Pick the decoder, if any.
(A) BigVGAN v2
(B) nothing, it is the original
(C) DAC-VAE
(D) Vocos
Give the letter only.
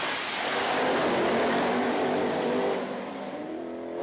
A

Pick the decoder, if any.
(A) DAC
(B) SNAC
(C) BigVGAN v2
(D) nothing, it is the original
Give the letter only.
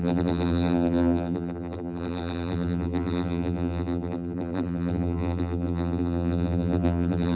C